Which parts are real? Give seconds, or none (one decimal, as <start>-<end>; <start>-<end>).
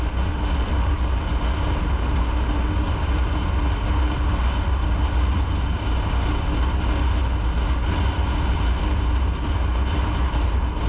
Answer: 0.0-10.9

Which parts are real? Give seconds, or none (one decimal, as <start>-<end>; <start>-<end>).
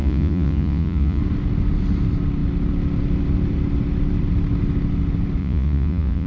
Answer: 1.2-5.4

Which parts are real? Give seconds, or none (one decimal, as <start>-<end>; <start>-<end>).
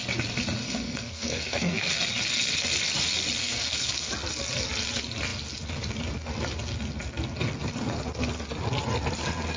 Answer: 0.0-0.6; 1.9-3.4; 4.1-9.6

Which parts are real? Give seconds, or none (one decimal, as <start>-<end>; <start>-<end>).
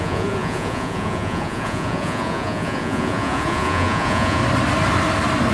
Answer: 4.4-5.5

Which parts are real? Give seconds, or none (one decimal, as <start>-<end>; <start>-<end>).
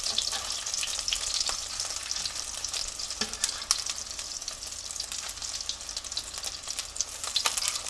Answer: 5.4-6.6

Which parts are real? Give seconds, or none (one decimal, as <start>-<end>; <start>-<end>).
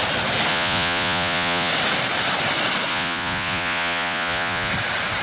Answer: 0.0-0.5; 1.7-2.9; 4.7-5.2